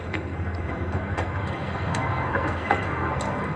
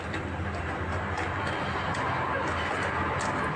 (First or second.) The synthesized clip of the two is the first